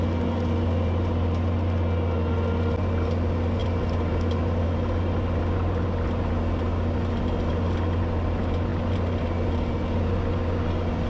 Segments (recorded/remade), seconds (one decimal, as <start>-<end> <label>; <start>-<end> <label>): 0.0-3.6 recorded; 3.6-4.1 remade; 4.1-11.1 recorded